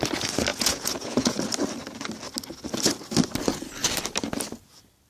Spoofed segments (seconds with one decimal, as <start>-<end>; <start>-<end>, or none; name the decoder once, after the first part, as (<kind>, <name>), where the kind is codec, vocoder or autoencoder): 0.5-1.4 (vocoder, Vocos)